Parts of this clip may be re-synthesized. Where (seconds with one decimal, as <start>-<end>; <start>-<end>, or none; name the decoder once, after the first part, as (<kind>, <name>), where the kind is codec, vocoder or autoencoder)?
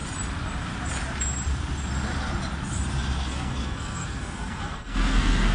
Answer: 3.3-5.5 (codec, SNAC)